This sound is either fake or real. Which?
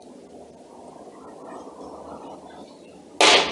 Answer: real